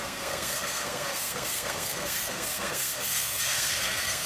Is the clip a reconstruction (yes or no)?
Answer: yes